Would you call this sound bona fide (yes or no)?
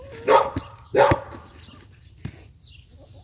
yes